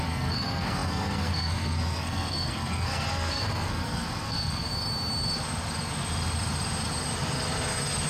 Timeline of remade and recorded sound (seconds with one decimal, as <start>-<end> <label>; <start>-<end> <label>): 0.0-4.7 remade; 4.7-8.1 recorded